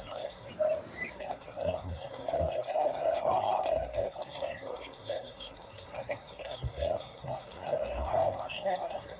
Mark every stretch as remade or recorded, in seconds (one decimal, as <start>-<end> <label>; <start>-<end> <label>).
0.0-0.5 remade; 0.5-1.1 recorded; 1.1-9.2 remade